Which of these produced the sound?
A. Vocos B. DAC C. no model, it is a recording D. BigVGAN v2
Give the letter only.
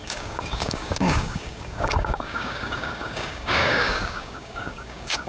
B